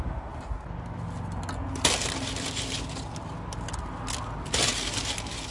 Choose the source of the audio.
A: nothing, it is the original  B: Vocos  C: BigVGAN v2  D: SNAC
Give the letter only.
A